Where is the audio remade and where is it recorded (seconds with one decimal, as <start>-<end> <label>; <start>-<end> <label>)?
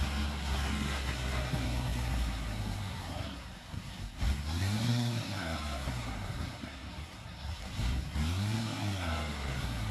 0.0-9.9 remade